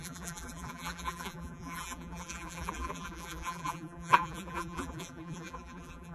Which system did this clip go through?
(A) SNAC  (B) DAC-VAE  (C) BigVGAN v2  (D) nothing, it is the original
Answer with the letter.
C